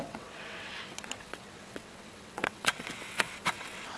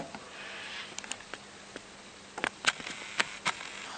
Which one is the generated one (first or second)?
first